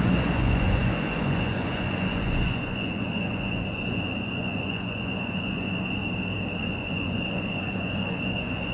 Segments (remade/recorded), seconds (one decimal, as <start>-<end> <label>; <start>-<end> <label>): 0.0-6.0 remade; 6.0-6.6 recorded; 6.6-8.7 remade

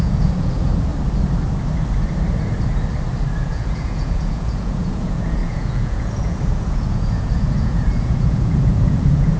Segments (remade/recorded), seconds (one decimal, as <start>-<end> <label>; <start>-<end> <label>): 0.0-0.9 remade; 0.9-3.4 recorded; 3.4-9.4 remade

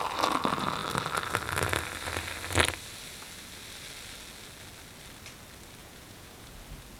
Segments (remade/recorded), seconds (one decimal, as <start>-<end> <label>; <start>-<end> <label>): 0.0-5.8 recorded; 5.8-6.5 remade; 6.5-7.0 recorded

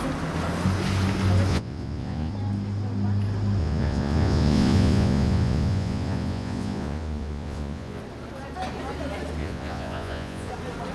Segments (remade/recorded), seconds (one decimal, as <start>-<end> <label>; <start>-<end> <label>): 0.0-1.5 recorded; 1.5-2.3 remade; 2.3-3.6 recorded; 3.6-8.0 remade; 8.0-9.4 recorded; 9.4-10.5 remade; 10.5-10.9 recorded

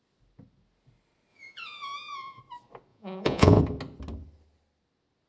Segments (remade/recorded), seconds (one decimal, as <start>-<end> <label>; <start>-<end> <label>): 0.0-1.3 recorded; 1.3-2.4 remade; 2.4-2.9 recorded; 2.9-3.6 remade; 3.6-5.3 recorded